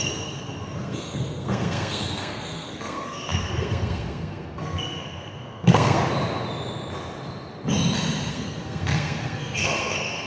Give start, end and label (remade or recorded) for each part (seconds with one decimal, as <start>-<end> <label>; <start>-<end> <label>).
0.0-6.0 remade; 6.0-8.3 recorded; 8.3-10.3 remade